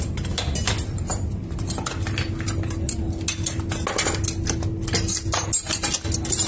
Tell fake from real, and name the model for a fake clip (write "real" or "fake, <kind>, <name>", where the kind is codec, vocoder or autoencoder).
real